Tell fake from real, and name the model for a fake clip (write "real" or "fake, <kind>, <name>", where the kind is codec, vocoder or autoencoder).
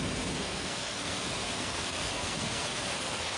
fake, codec, SNAC